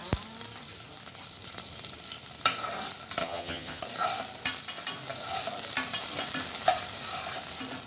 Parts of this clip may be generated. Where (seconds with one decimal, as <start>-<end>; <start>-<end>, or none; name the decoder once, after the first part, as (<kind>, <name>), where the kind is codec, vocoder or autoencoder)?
3.2-3.8 (vocoder, HiFi-GAN)

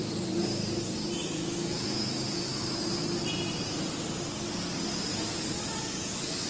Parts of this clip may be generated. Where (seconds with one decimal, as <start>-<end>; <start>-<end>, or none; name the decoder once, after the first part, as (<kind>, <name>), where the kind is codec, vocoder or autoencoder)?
1.2-2.9 (autoencoder, DAC-VAE)

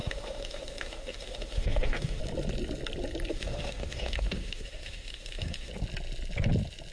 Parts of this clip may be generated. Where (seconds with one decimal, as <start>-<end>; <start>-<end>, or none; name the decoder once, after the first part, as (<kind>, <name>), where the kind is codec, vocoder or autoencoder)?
0.0-2.2 (autoencoder, DAC-VAE); 3.3-5.7

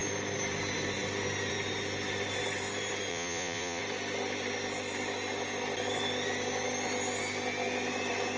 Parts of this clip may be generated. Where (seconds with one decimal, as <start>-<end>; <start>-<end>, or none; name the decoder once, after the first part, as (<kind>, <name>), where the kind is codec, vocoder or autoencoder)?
3.1-3.8 (vocoder, Vocos)

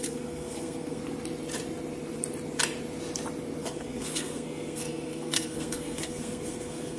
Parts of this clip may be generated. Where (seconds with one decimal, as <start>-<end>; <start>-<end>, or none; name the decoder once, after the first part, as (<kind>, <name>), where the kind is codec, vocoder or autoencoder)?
0.0-1.0 (codec, SNAC); 3.6-7.0

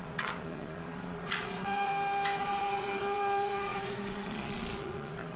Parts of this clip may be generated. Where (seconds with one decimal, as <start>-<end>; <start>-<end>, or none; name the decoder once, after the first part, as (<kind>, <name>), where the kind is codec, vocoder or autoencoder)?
0.0-1.9 (vocoder, Vocos); 2.4-5.4

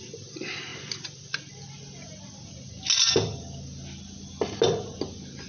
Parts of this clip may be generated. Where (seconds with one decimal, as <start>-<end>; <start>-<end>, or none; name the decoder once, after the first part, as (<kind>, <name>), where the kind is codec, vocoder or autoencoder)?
none

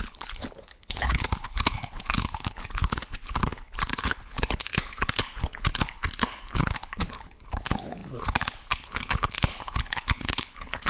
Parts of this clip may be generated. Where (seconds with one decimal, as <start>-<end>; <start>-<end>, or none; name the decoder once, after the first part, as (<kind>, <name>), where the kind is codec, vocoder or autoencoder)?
0.0-10.9 (codec, HILCodec)